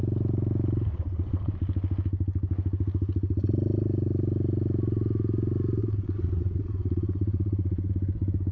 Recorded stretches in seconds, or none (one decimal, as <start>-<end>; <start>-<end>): 0.0-0.9; 1.5-5.8; 7.9-8.5